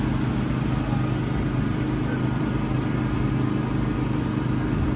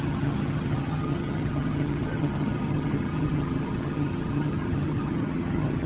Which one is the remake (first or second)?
second